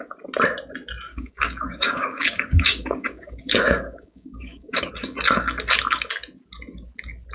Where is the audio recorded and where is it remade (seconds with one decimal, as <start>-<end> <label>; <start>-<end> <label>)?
0.0-1.1 recorded; 1.1-4.9 remade; 4.9-7.3 recorded